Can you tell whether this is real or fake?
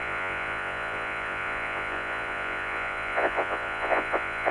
fake